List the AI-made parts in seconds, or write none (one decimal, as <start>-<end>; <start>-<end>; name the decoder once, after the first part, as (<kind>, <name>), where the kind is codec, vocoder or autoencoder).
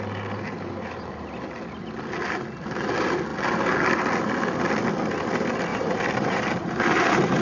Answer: 5.7-7.4 (vocoder, BigVGAN v2)